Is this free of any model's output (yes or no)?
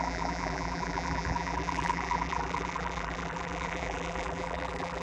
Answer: no